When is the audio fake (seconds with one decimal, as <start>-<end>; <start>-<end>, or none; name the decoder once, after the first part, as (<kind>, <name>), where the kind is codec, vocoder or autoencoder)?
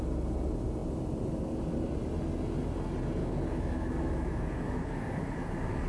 3.2-5.9 (codec, DAC)